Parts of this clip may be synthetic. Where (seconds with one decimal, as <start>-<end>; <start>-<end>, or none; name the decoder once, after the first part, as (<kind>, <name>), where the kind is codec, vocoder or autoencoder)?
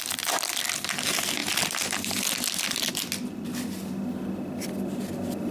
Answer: none